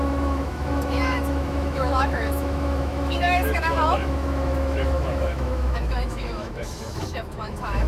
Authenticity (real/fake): fake